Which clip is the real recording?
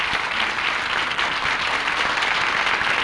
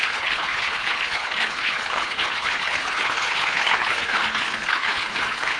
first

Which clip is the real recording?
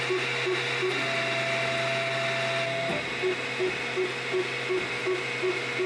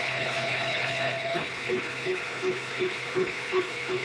first